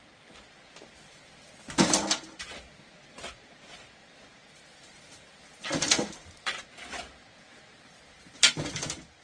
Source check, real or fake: fake